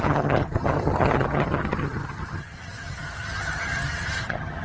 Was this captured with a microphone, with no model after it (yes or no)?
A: no